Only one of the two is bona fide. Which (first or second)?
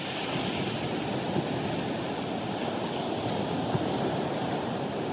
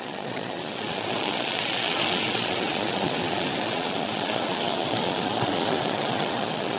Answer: first